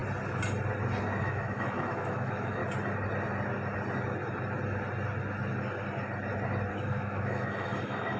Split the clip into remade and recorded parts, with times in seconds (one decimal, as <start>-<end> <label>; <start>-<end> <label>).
0.0-1.2 recorded; 1.2-2.6 remade; 2.6-6.7 recorded; 6.7-8.2 remade